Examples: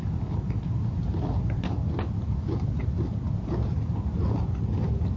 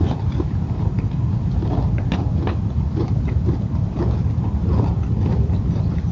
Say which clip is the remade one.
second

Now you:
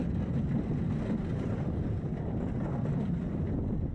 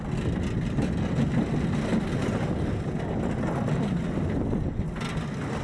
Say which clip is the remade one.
first